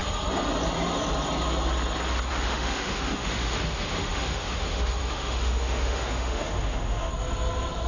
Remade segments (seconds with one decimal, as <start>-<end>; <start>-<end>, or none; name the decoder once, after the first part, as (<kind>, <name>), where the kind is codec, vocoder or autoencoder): 2.3-7.1 (autoencoder, DAC-VAE)